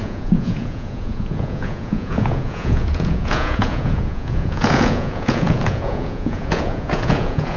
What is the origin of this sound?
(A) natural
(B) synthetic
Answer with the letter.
B